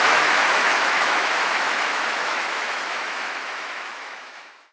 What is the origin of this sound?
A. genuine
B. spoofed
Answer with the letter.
B